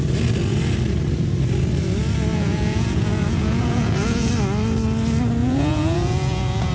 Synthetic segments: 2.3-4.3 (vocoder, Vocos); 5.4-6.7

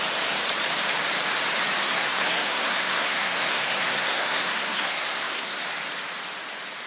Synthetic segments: 1.8-5.6 (codec, SNAC)